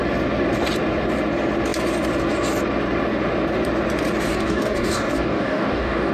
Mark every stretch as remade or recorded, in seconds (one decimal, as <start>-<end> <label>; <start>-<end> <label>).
0.0-4.3 recorded; 4.3-6.1 remade